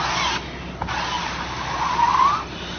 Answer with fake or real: real